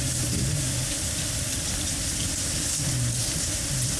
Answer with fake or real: real